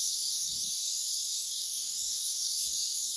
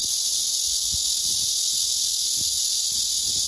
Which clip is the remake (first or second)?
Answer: first